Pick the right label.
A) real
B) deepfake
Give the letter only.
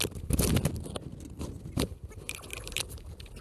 A